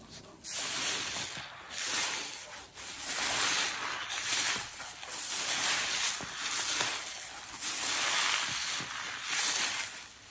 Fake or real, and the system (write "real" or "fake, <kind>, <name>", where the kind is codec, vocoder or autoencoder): real